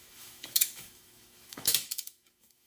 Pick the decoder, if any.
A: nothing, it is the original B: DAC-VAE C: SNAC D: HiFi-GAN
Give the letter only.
B